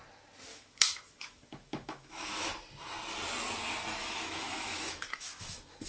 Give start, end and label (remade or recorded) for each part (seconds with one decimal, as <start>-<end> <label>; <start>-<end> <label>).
0.0-0.5 recorded; 0.5-2.5 remade; 2.5-4.0 recorded; 4.0-5.9 remade